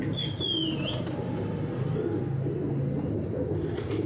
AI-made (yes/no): no